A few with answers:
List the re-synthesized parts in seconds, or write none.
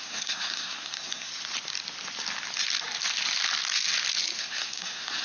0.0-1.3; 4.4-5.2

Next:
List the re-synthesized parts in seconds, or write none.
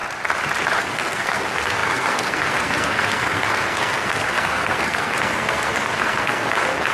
0.8-6.9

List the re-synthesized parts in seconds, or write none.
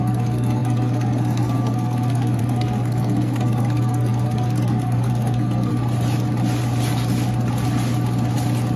0.0-5.7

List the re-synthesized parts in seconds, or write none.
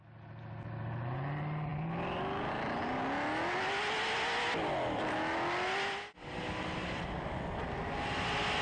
none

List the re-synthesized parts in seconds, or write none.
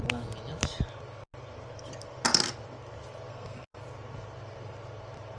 3.3-3.8